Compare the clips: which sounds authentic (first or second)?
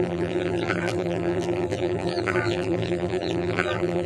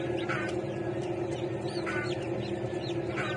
second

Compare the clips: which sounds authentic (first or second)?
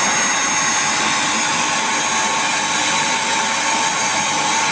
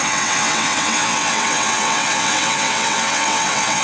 first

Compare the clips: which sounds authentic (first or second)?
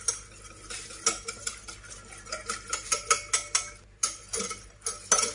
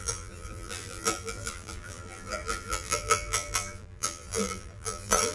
first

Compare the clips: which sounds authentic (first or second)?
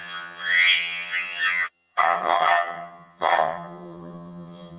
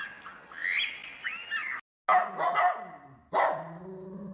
second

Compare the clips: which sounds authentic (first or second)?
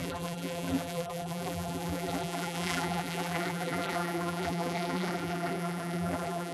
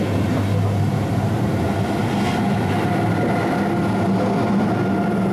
second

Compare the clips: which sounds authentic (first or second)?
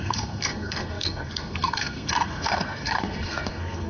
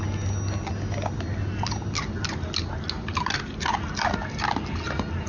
second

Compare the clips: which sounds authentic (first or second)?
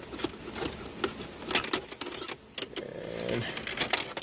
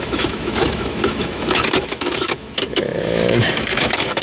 first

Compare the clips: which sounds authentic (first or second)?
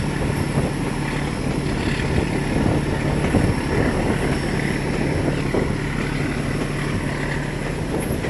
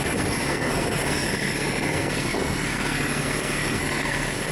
first